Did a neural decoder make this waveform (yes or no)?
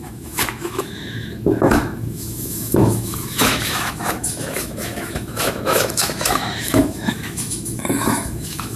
yes